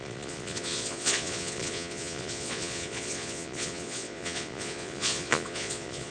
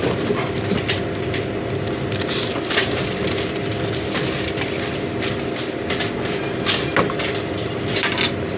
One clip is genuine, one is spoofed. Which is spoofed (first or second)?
first